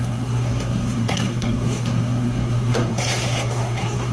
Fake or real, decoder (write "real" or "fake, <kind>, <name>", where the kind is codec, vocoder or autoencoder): fake, codec, SNAC